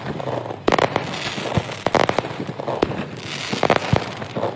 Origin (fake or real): real